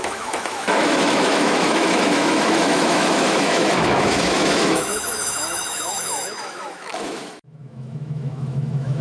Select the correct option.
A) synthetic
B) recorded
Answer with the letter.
A